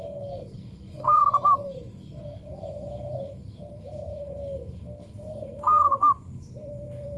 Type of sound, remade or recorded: remade